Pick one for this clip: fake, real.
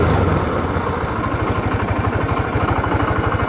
real